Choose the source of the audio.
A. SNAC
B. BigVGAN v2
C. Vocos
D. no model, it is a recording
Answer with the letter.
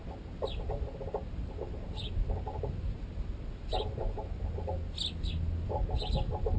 D